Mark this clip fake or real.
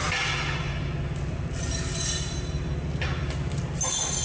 real